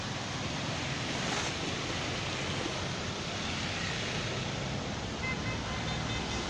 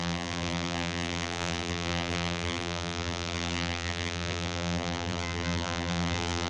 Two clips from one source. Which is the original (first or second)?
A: first